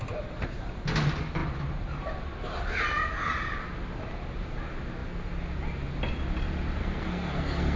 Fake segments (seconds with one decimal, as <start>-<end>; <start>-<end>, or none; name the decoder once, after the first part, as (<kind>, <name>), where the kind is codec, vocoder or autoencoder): 6.8-7.8 (codec, SNAC)